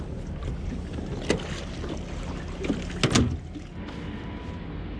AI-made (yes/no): no